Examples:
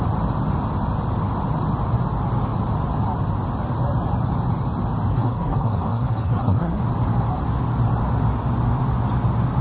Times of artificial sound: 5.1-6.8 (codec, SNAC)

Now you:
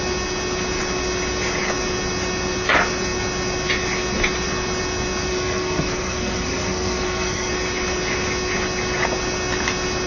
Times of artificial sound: 5.3-7.5 (codec, SNAC)

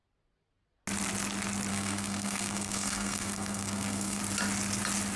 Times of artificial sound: 1.7-4.2 (codec, SNAC)

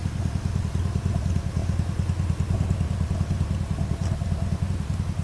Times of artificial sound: none

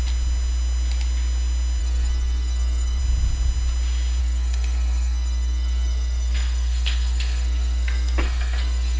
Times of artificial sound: 1.8-3.0 (codec, SNAC); 4.2-9.0